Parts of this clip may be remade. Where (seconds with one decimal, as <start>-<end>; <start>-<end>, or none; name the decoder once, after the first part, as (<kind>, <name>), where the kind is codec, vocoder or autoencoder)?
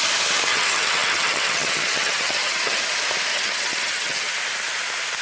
0.5-2.8 (vocoder, HiFi-GAN); 3.3-4.3